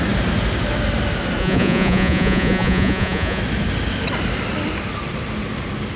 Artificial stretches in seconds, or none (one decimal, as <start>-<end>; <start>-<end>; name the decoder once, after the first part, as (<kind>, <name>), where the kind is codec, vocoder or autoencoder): 1.4-3.4 (vocoder, Vocos)